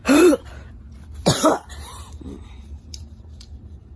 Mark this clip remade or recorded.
remade